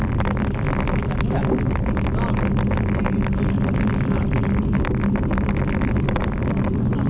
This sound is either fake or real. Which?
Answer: real